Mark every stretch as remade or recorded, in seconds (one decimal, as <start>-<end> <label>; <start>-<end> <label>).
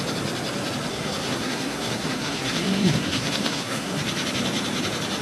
0.0-0.9 recorded; 0.9-4.0 remade; 4.0-5.2 recorded